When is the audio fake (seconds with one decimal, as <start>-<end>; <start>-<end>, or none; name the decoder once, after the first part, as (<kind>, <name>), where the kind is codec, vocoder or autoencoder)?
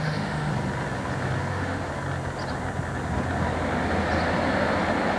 0.0-0.5 (autoencoder, DAC-VAE); 1.5-1.9